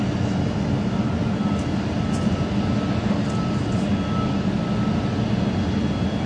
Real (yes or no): yes